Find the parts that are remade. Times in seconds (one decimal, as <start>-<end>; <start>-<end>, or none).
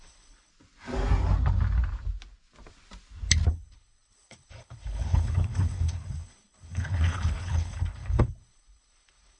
0.0-0.5; 3.5-9.4